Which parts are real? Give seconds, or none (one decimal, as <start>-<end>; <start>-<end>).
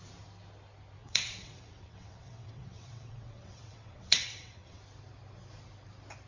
0.0-1.0; 4.8-6.3